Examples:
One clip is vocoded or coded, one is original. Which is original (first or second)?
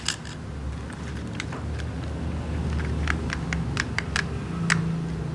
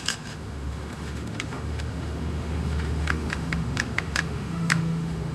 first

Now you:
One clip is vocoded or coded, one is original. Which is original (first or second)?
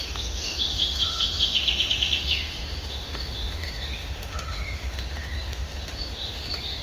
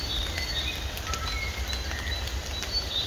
second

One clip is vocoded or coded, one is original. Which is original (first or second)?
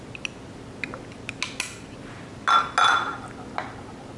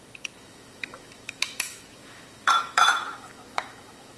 first